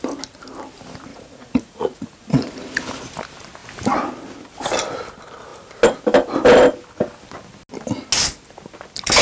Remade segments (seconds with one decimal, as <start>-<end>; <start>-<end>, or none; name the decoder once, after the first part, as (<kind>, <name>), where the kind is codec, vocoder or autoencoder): 1.1-2.5 (vocoder, Vocos)

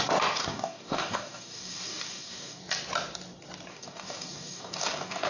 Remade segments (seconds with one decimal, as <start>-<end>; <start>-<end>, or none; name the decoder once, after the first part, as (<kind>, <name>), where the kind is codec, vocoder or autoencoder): 0.4-2.6 (codec, DAC); 3.7-5.3

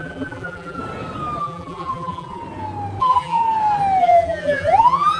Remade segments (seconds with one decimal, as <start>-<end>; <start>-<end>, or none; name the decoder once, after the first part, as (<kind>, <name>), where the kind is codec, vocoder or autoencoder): 0.0-0.8 (vocoder, BigVGAN v2); 1.4-2.4; 3.0-3.4; 4.0-5.2

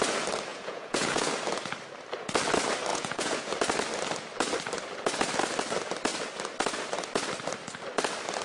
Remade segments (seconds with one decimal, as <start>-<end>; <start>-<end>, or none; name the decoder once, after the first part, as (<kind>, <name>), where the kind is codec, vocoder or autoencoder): 0.5-1.3 (vocoder, Vocos); 2.9-3.5